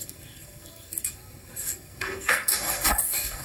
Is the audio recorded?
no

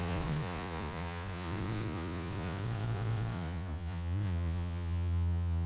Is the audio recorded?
no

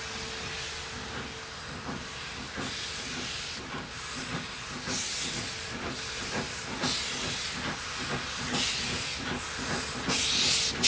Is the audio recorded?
yes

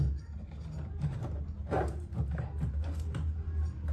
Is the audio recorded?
yes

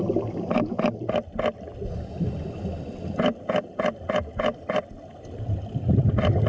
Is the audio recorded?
yes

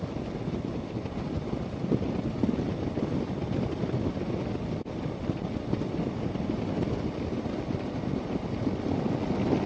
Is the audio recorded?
yes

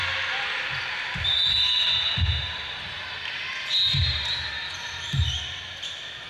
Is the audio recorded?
yes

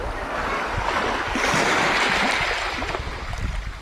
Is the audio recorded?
yes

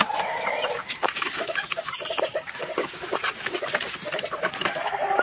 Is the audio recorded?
no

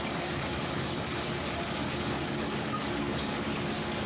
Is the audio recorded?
no